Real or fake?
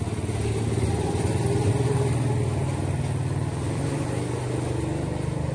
real